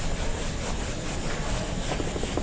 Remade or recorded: recorded